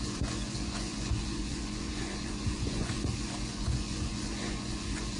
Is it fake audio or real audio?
fake